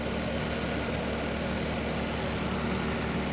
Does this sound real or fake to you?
real